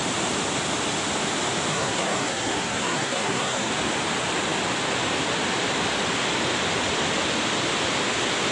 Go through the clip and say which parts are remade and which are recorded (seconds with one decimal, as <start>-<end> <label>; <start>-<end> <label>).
0.0-1.7 recorded; 1.7-3.7 remade; 3.7-8.5 recorded